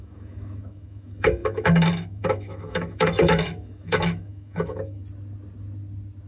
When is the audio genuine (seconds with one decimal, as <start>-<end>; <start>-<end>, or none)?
5.0-6.3